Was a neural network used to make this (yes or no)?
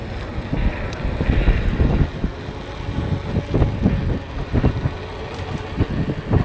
no